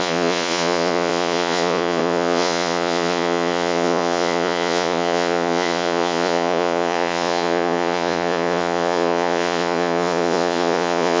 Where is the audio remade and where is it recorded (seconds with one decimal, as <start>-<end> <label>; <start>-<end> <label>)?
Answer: 0.0-11.2 remade